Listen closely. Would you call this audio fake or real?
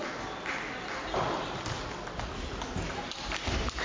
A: real